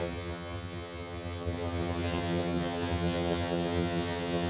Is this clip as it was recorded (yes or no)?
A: no